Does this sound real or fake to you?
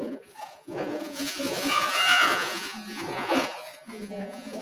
fake